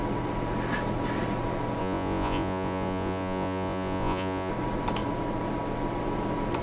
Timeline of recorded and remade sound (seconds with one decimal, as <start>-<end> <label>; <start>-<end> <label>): 0.0-1.8 recorded; 1.8-4.5 remade; 4.5-6.6 recorded